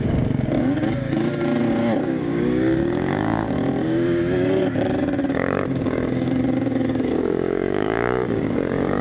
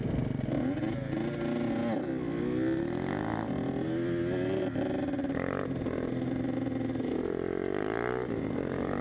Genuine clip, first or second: second